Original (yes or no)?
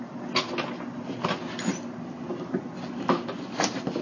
yes